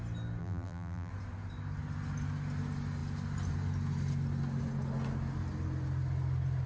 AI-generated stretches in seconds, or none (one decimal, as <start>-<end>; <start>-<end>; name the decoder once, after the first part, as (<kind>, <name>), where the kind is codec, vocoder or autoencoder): 0.4-1.1 (vocoder, BigVGAN v2)